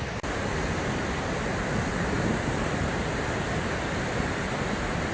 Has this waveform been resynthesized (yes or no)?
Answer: no